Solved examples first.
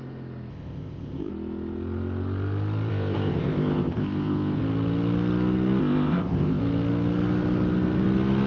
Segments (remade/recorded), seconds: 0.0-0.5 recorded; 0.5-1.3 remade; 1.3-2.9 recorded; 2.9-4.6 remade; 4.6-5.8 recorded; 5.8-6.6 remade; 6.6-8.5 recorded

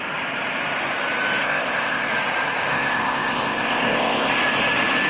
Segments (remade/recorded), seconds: 0.0-1.4 recorded; 1.4-2.1 remade; 2.1-2.7 recorded; 2.7-4.3 remade; 4.3-5.1 recorded